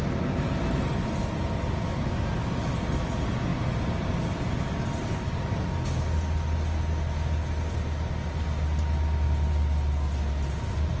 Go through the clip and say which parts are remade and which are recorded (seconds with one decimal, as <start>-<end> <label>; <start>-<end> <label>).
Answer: 0.0-11.0 recorded

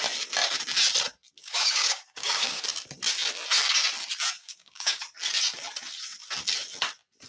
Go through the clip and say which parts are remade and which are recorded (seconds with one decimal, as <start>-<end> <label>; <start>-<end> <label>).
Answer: 0.0-1.4 recorded; 1.4-2.6 remade; 2.6-4.4 recorded; 4.4-5.0 remade; 5.0-7.3 recorded

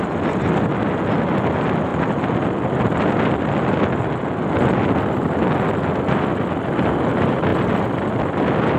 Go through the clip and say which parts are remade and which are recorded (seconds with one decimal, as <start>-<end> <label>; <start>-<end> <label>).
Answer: 0.0-8.8 recorded

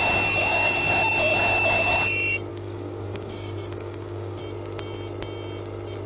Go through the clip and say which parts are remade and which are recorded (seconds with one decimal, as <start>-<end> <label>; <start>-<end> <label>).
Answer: 0.0-0.4 recorded; 0.4-0.9 remade; 0.9-2.5 recorded; 2.5-4.4 remade; 4.4-6.1 recorded

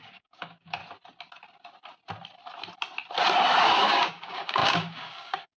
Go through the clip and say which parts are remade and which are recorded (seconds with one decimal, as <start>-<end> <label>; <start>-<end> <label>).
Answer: 0.0-0.8 remade; 0.8-3.6 recorded; 3.6-5.6 remade

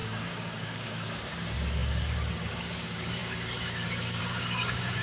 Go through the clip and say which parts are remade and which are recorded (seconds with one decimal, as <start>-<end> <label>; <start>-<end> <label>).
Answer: 0.0-5.0 remade

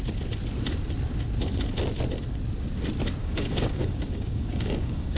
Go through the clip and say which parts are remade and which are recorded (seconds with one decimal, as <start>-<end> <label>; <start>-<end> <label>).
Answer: 0.0-3.2 recorded; 3.2-5.2 remade

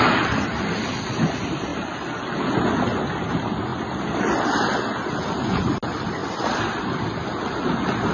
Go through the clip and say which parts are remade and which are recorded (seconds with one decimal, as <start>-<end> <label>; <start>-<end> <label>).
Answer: 0.0-8.1 recorded